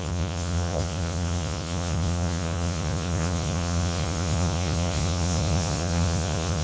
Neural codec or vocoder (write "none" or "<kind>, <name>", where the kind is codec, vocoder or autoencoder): vocoder, Vocos